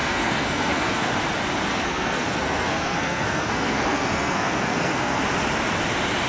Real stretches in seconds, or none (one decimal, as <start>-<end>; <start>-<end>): 1.1-1.7; 5.2-6.3

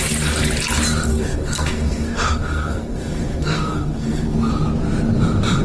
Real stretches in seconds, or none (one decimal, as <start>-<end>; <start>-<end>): 0.0-1.1; 4.5-5.6

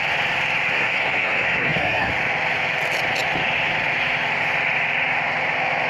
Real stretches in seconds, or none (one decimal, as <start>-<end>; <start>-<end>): 0.0-0.7; 2.1-5.9

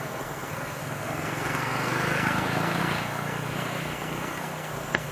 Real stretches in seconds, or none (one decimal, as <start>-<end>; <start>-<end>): none

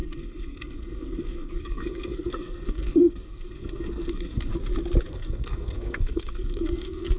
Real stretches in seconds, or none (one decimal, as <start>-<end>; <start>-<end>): 4.5-5.1

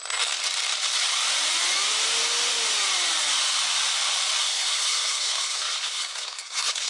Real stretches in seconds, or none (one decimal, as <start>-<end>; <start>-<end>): 0.0-4.4

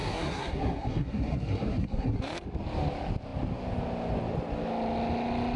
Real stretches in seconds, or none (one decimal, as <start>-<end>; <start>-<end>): 2.2-5.6